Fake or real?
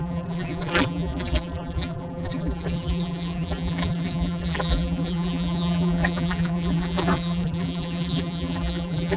fake